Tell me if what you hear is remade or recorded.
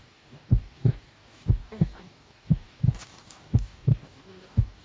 remade